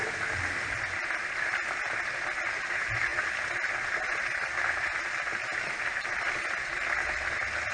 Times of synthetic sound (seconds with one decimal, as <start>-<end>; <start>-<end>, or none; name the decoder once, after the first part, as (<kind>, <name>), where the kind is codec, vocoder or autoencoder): none